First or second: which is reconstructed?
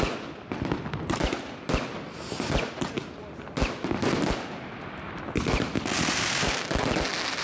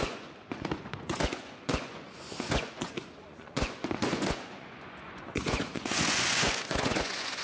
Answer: second